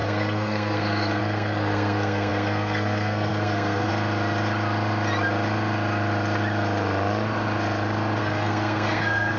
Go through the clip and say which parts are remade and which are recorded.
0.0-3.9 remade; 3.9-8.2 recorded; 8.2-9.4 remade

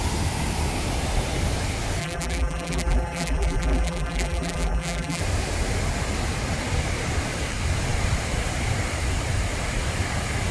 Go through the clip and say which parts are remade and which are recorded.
0.0-2.0 recorded; 2.0-5.2 remade; 5.2-10.5 recorded

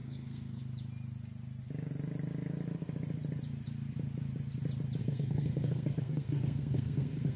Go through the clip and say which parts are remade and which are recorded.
0.0-0.6 remade; 0.6-5.0 recorded; 5.0-7.4 remade